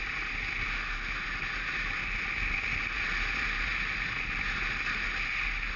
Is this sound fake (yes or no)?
no